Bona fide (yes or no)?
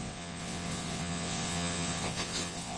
no